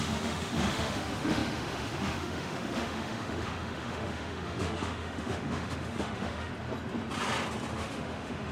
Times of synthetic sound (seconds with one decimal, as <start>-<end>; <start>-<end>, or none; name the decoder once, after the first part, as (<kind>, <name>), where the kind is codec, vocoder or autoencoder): 0.0-6.5 (autoencoder, DAC-VAE); 7.7-8.5